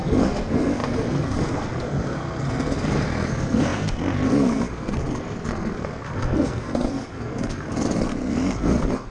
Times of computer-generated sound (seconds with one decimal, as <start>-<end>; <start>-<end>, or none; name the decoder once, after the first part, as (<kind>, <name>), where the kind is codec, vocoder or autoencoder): 0.0-9.1 (codec, SNAC)